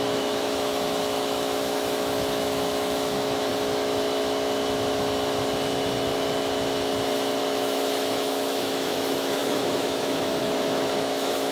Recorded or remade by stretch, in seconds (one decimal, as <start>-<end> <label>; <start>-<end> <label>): 0.0-3.5 remade; 3.5-7.4 recorded; 7.4-11.5 remade